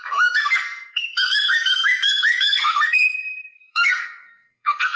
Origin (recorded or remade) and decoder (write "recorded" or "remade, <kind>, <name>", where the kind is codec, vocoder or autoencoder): remade, codec, SNAC